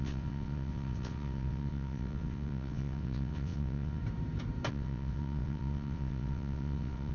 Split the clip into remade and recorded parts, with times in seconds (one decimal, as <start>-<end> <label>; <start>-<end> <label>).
0.0-4.0 remade; 4.0-4.7 recorded; 4.7-7.1 remade